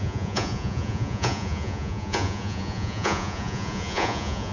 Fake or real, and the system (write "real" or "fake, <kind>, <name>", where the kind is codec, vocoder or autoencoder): fake, vocoder, Vocos